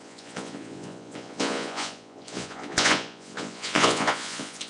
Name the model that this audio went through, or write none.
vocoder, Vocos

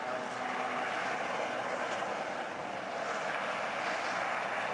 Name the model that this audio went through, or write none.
none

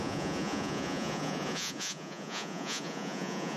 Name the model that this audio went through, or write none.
vocoder, Vocos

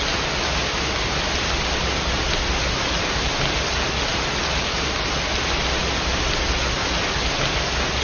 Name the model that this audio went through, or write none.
none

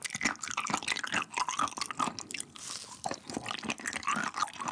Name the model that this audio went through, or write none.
none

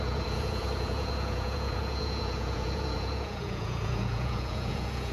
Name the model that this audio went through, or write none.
vocoder, Vocos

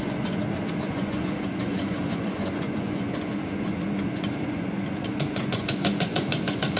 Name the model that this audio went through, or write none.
vocoder, Vocos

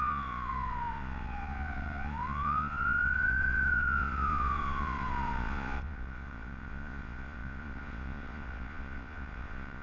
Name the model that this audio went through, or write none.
vocoder, Vocos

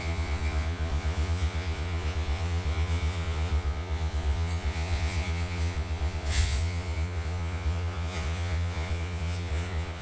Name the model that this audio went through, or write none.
vocoder, Vocos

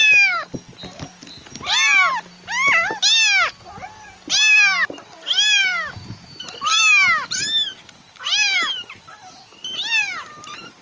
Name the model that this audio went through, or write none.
none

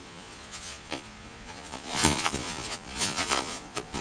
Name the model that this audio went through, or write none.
vocoder, Vocos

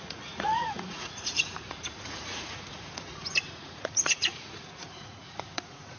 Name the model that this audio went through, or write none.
vocoder, Vocos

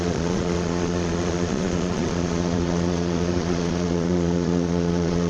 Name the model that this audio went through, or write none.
vocoder, Vocos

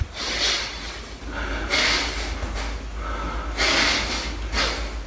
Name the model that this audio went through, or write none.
none